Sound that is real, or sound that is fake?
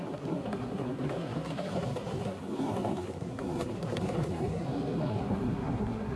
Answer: fake